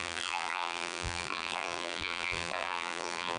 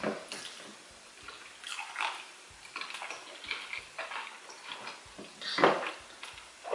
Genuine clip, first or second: second